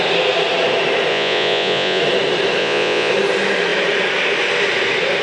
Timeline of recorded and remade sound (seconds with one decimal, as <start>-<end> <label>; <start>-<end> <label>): 0.0-1.1 recorded; 1.1-2.0 remade; 2.0-2.6 recorded; 2.6-3.1 remade; 3.1-5.2 recorded